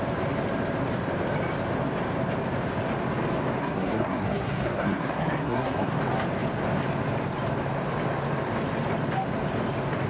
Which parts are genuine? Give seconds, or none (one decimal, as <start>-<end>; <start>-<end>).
0.0-3.6; 6.0-10.1